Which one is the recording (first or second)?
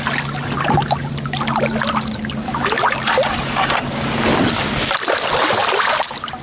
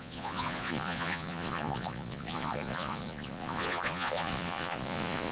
first